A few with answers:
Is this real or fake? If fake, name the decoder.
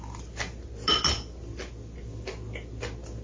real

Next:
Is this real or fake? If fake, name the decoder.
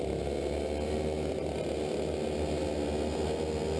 real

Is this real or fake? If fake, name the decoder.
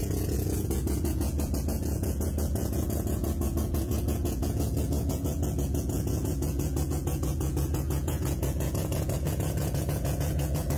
fake, vocoder, Vocos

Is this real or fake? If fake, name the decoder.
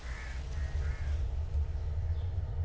real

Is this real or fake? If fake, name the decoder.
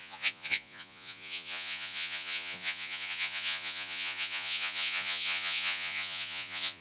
fake, vocoder, Vocos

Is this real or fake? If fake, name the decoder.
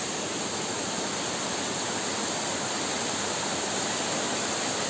real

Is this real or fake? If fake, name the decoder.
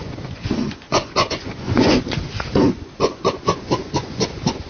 fake, vocoder, Vocos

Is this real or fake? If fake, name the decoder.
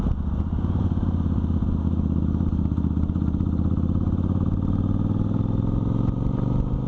real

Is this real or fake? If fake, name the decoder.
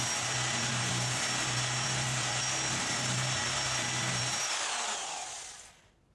real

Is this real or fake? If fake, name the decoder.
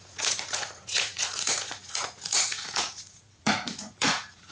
fake, vocoder, Vocos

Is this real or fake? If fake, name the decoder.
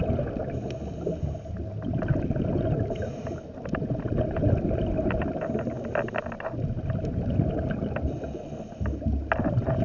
real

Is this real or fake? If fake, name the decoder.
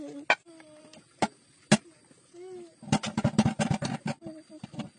real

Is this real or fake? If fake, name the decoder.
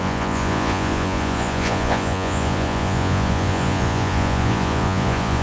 fake, vocoder, Vocos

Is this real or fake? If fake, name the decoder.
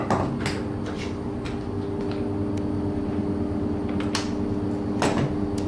real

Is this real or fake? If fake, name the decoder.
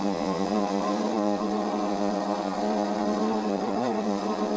fake, vocoder, Vocos